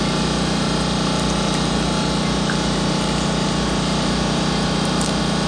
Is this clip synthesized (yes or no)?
yes